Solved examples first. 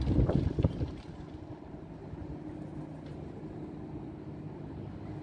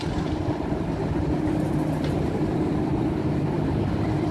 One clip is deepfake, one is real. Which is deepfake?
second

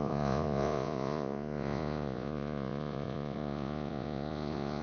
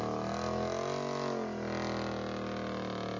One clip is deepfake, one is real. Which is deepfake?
first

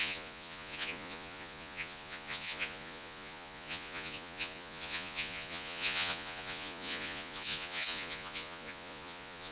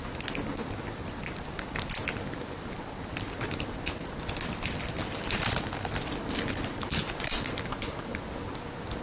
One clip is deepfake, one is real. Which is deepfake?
first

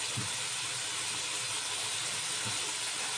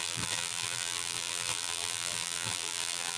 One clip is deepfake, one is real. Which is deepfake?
second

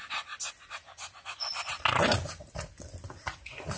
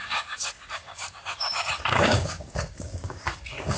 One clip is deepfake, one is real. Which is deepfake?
second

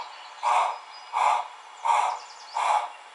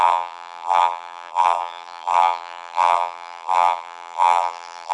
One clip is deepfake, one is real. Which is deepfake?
second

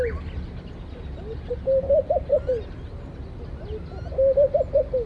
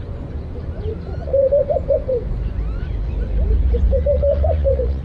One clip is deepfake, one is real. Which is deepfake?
second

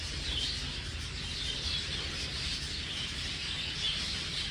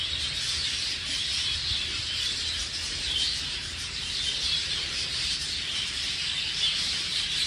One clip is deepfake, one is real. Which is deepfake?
second